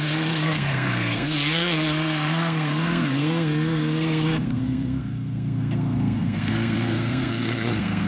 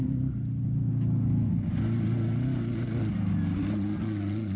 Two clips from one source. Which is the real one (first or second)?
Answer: second